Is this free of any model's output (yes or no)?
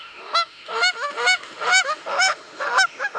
no